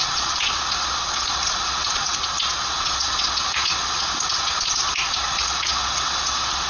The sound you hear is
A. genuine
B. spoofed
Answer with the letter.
B